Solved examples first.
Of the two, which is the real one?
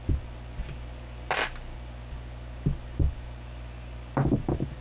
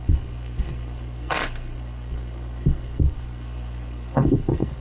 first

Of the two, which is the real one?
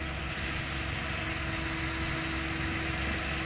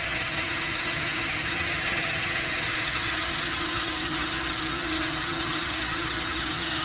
first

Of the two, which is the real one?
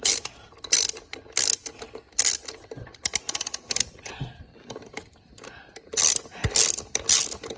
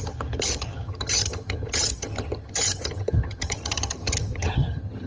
first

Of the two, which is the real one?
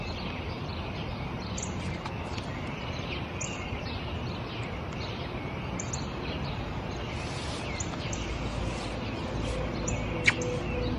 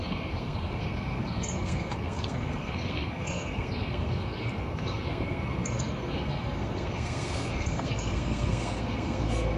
first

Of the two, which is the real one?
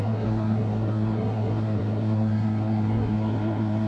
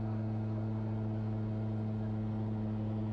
second